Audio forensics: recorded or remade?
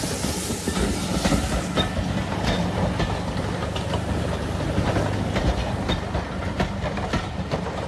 recorded